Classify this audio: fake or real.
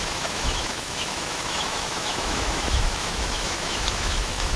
fake